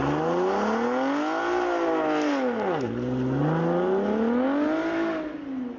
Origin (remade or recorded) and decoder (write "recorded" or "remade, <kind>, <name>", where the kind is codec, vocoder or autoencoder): recorded